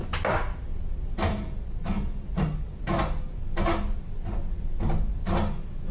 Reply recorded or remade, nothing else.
recorded